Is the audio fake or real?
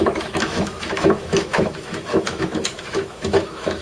fake